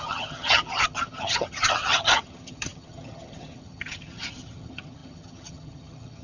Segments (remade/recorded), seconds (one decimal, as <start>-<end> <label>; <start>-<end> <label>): 0.0-6.2 remade